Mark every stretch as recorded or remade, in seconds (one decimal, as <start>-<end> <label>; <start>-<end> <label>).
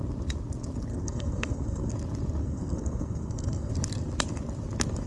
0.0-0.9 recorded; 0.9-1.9 remade; 1.9-2.4 recorded; 2.4-3.7 remade; 3.7-5.1 recorded